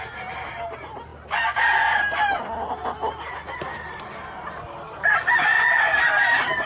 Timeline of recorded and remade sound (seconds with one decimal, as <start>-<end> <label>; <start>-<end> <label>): 0.0-6.7 recorded